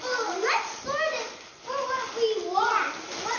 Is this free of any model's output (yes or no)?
yes